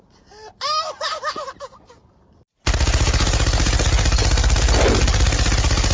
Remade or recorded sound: recorded